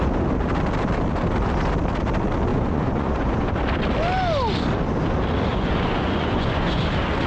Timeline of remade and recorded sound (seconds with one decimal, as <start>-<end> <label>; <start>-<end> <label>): 0.0-2.5 recorded; 2.5-3.6 remade; 3.6-5.5 recorded; 5.5-6.8 remade; 6.8-7.3 recorded